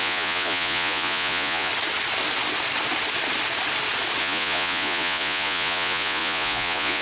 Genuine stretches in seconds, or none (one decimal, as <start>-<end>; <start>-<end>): 1.7-4.2